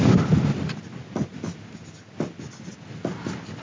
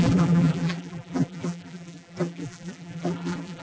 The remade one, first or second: second